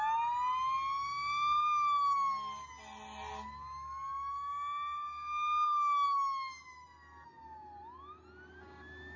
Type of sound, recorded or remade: recorded